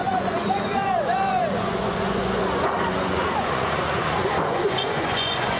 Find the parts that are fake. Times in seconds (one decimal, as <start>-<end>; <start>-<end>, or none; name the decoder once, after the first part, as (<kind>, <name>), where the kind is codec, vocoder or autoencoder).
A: 0.0-5.6 (vocoder, Vocos)